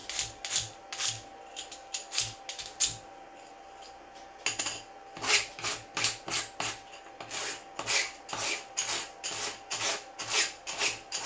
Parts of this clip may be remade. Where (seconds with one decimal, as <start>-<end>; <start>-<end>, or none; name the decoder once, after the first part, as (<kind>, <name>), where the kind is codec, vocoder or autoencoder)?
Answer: none